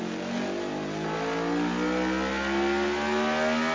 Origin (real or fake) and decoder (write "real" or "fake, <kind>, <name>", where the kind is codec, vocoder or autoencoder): real